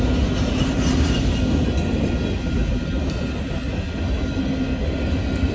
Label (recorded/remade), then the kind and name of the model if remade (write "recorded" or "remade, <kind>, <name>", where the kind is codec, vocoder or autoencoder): recorded